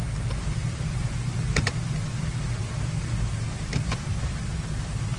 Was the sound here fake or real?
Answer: real